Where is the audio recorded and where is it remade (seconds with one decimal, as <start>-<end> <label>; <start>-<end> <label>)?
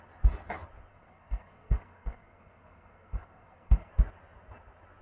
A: 0.0-0.9 recorded; 0.9-3.9 remade; 3.9-5.0 recorded